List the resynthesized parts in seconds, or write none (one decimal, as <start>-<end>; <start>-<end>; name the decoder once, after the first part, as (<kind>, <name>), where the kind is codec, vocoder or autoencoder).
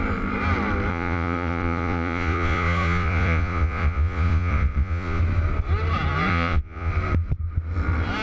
0.9-5.2 (vocoder, Vocos); 6.3-6.9